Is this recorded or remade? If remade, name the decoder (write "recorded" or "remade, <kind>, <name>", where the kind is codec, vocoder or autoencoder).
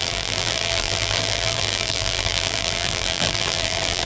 remade, vocoder, BigVGAN v2